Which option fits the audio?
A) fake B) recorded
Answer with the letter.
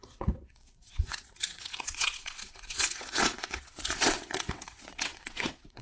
A